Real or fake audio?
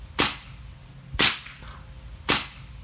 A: real